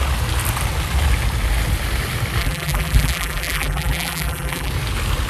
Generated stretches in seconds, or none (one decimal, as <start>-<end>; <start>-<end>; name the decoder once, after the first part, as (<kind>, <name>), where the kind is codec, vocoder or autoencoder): 2.4-4.7 (vocoder, BigVGAN v2)

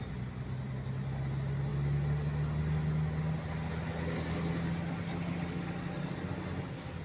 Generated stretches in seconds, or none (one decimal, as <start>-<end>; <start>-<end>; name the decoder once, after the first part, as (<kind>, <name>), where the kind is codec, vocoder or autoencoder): none